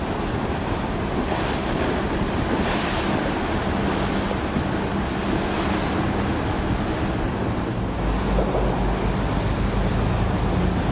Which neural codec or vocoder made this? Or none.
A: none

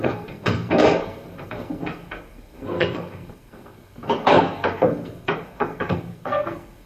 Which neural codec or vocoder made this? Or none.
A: codec, SNAC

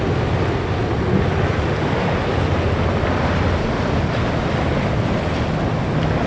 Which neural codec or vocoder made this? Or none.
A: none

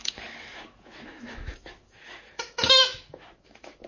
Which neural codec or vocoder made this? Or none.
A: autoencoder, DAC-VAE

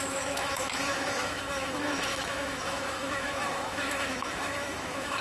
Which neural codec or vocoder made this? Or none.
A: autoencoder, DAC-VAE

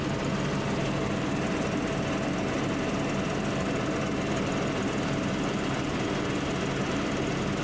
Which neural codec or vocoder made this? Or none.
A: none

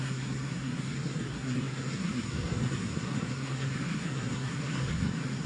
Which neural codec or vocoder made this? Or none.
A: codec, SNAC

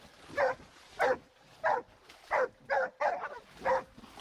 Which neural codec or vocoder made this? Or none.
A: none